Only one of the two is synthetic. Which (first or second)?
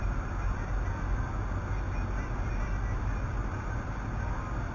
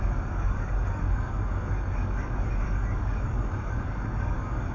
second